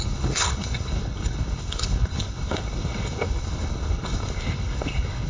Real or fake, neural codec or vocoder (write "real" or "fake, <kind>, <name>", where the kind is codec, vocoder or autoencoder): fake, codec, HILCodec